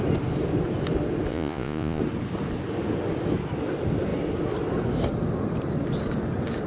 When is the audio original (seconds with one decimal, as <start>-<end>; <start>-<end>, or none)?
0.0-1.3; 2.0-6.7